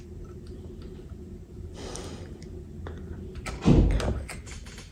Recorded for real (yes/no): yes